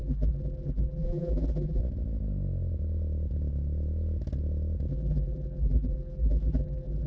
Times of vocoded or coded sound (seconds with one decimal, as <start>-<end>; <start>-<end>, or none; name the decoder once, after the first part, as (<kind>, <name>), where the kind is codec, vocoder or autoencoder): 0.0-1.8 (vocoder, BigVGAN v2); 4.9-7.1